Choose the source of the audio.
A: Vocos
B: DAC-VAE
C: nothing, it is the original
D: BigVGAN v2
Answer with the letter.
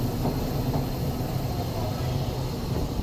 C